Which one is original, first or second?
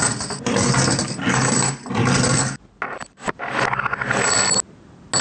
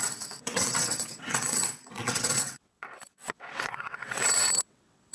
first